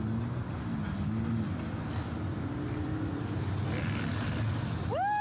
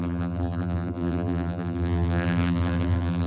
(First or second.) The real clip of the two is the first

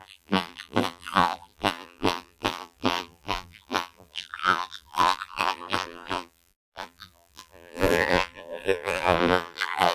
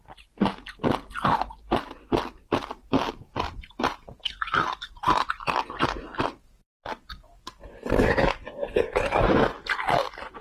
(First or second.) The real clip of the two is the second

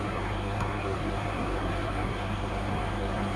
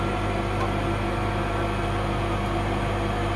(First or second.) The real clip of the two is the second